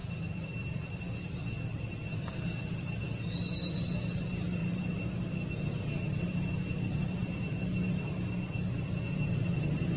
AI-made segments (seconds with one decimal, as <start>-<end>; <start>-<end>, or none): none